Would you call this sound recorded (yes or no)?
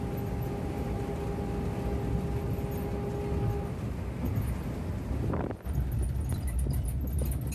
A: yes